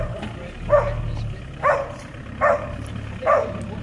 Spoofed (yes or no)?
no